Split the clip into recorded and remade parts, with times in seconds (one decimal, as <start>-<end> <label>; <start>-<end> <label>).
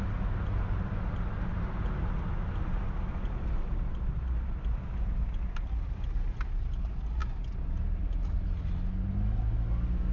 0.0-10.1 recorded